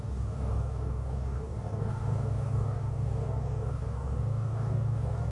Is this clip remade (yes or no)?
yes